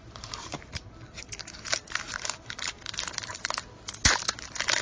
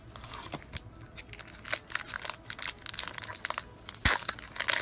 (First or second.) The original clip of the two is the second